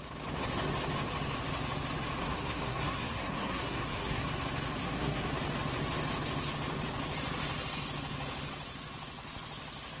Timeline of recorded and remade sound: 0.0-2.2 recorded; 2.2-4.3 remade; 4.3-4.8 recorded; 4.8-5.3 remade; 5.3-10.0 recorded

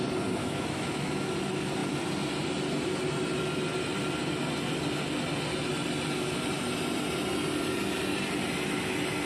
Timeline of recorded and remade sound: 0.0-0.4 recorded; 0.4-1.3 remade; 1.3-9.3 recorded

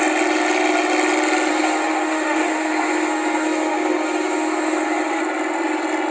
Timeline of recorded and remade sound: 0.0-1.5 recorded; 1.5-5.2 remade; 5.2-6.1 recorded

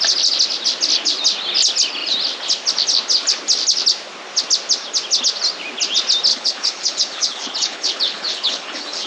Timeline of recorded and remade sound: 0.0-6.3 recorded; 6.3-9.1 remade

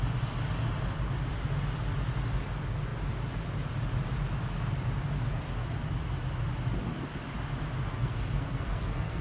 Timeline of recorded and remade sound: 0.0-7.9 recorded; 7.9-9.2 remade